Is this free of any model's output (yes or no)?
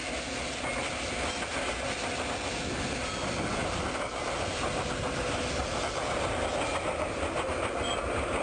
yes